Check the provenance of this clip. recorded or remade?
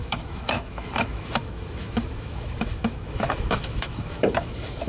remade